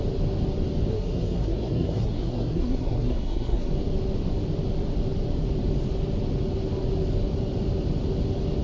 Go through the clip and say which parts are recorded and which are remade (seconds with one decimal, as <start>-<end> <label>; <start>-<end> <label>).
0.0-0.9 recorded; 0.9-3.7 remade; 3.7-8.6 recorded